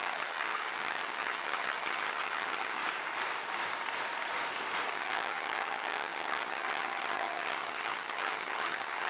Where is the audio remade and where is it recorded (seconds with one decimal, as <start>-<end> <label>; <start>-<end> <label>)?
0.0-2.8 remade; 2.8-4.9 recorded; 4.9-9.1 remade